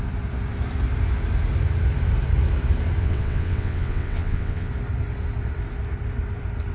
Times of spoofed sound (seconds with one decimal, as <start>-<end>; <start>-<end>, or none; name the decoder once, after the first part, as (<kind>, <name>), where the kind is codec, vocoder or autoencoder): 3.0-4.7 (vocoder, WaveNeXt)